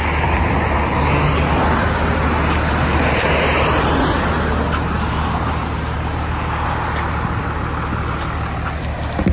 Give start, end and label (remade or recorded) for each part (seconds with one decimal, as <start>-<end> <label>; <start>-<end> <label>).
0.0-9.3 recorded